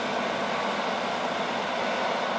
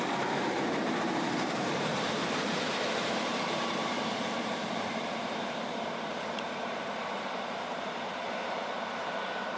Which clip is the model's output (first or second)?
second